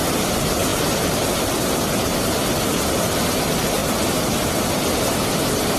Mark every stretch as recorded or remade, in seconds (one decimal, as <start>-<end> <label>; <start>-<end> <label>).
0.0-5.8 recorded

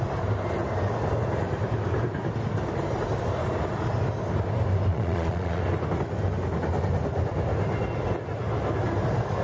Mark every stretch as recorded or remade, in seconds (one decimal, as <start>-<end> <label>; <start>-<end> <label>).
0.0-4.9 recorded; 4.9-5.6 remade; 5.6-9.4 recorded

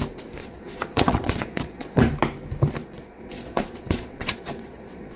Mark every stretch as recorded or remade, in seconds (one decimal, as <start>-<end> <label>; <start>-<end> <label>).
0.0-0.4 recorded; 0.4-2.0 remade; 2.0-2.8 recorded; 2.8-5.2 remade

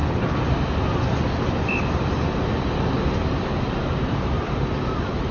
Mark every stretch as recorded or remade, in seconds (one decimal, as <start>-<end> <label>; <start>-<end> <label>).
0.0-0.7 recorded; 0.7-5.3 remade

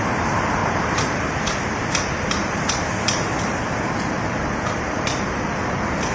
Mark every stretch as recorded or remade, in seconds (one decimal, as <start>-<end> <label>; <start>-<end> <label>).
0.0-6.1 remade

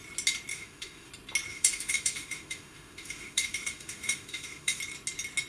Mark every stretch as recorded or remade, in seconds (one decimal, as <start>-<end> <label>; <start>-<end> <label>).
0.0-0.5 recorded; 0.5-1.1 remade; 1.1-1.5 recorded; 1.5-4.8 remade; 4.8-5.5 recorded

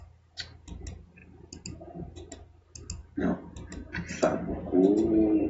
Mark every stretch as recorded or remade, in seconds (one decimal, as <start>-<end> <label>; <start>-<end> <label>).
0.0-5.5 recorded

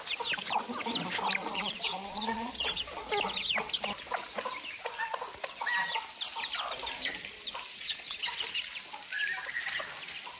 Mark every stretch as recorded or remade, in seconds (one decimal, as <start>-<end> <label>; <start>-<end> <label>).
0.0-1.4 recorded; 1.4-3.0 remade; 3.0-7.7 recorded; 7.7-8.4 remade; 8.4-10.4 recorded